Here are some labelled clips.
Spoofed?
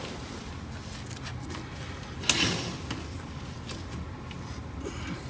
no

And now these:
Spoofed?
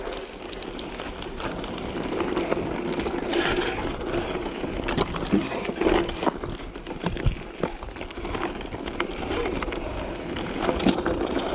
no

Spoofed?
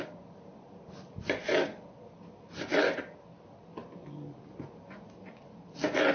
no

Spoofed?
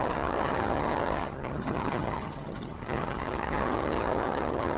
yes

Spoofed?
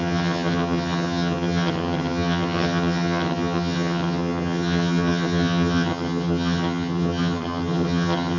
yes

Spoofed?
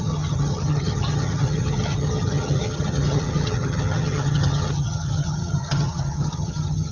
yes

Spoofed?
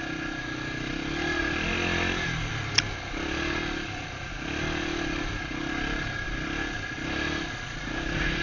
no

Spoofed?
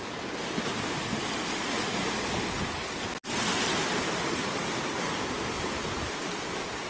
no